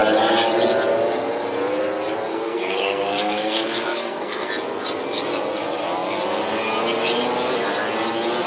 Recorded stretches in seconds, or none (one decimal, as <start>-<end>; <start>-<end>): 0.0-2.3; 4.5-8.5

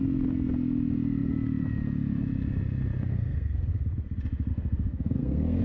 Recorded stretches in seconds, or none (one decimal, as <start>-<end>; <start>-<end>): 0.0-3.1; 3.7-4.5